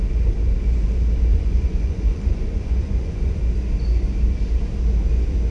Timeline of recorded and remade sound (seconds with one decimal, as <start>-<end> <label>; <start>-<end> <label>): 0.0-1.3 recorded; 1.3-3.4 remade; 3.4-5.5 recorded